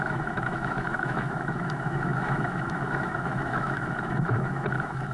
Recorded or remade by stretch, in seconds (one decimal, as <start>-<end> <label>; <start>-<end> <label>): 0.0-5.1 remade